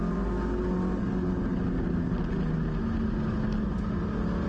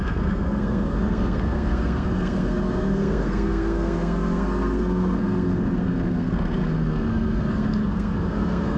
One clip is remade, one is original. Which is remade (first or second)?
second